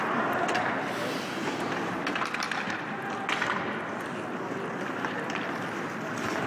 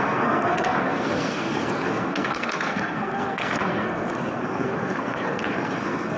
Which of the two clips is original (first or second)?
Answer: first